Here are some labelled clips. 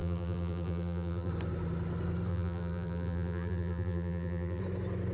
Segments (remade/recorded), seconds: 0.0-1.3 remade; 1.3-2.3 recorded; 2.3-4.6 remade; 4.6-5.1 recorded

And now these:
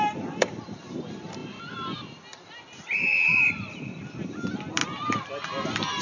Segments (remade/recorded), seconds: 0.0-4.8 remade; 4.8-6.0 recorded